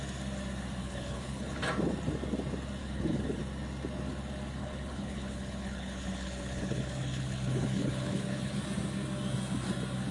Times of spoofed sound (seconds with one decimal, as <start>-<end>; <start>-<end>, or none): 0.8-1.6; 2.8-3.4; 4.6-8.6